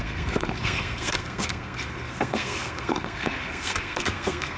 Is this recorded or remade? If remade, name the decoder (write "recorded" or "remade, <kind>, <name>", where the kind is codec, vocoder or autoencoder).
remade, codec, SNAC